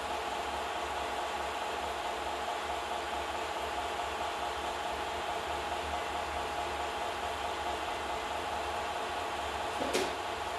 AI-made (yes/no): no